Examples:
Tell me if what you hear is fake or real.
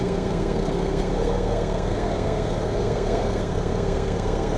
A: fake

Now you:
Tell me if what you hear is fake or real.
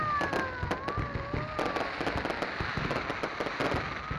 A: real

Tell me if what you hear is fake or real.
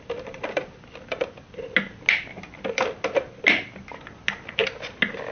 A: real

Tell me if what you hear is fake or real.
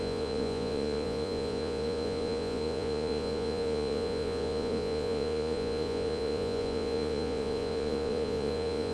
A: fake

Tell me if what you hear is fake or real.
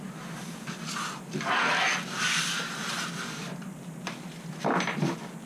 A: real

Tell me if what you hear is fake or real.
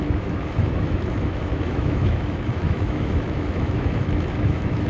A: fake